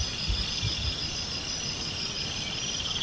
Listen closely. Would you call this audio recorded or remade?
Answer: recorded